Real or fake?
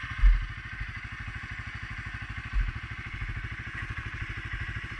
real